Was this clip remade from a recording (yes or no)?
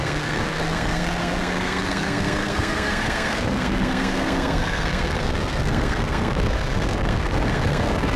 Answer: yes